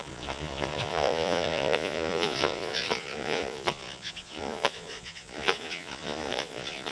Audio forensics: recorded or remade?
remade